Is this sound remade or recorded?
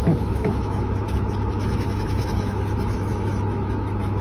remade